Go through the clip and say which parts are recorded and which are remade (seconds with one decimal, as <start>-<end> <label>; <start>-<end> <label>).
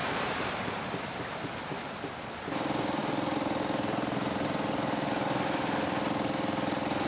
0.0-1.4 remade; 1.4-7.1 recorded